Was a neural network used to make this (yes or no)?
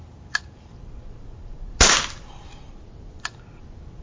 no